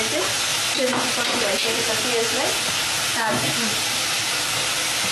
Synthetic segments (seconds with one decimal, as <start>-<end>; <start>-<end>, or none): 0.5-1.4